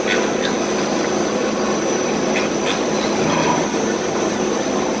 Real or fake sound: real